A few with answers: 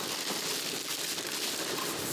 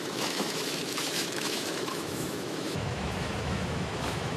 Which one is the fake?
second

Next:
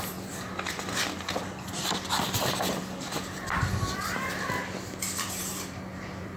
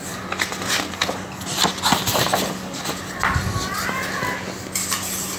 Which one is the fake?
first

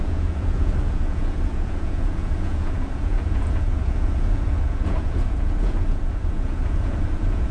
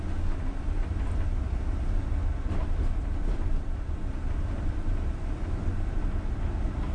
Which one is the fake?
first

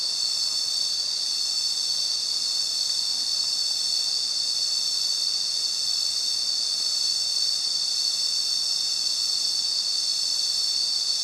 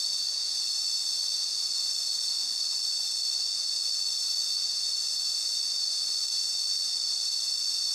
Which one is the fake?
second